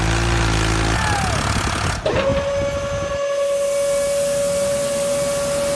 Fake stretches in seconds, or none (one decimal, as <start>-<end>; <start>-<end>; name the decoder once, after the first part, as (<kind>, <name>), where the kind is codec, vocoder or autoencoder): none